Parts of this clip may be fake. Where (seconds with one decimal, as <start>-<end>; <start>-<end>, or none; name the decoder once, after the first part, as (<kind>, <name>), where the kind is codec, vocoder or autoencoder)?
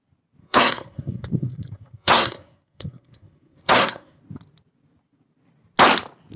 0.4-4.2 (codec, SNAC)